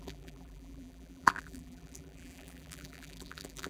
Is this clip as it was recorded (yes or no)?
no